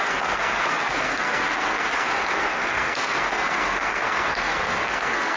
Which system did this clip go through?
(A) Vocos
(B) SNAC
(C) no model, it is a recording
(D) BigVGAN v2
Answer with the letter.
B